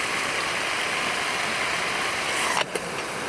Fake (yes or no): no